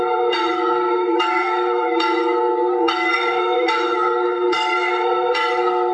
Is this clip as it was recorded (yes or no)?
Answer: no